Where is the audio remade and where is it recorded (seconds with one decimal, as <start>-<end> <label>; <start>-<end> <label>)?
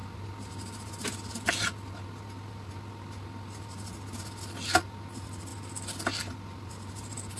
0.0-7.4 recorded